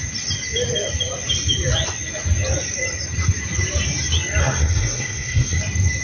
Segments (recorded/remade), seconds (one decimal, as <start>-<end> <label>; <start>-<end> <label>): 0.0-4.4 recorded; 4.4-5.6 remade; 5.6-6.0 recorded